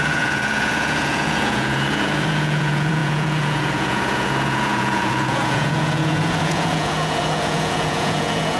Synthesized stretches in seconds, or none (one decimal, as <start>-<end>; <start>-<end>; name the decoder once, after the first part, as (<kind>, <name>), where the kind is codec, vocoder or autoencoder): 0.0-8.6 (vocoder, Vocos)